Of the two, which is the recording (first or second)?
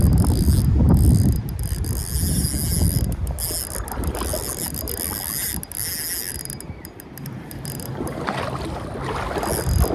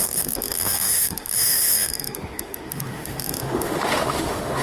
first